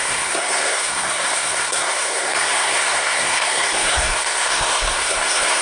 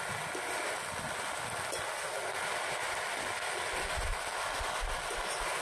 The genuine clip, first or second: second